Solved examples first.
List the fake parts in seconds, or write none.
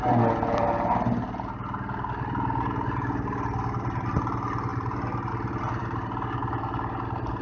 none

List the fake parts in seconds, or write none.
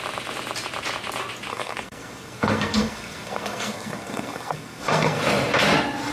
1.5-5.2 (codec, SNAC)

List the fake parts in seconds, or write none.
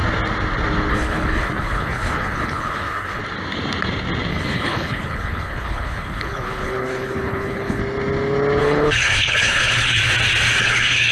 0.9-3.2 (codec, HILCodec); 4.3-7.8; 8.6-10.0; 10.6-11.1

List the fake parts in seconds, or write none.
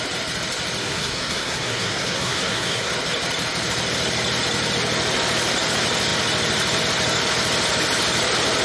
0.8-2.9 (codec, SNAC)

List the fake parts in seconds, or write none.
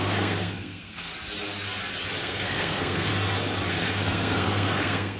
0.0-1.1 (codec, SNAC); 2.2-3.1; 3.7-5.2